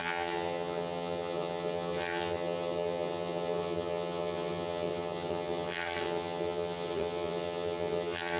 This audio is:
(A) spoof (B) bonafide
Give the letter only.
A